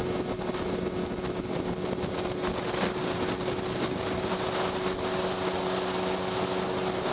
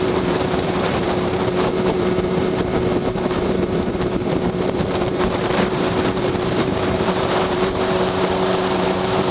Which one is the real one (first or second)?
first